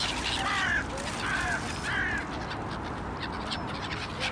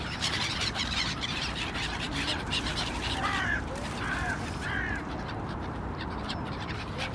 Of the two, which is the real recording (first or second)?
first